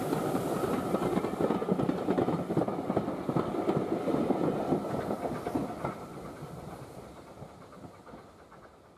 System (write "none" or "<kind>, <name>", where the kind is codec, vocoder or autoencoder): none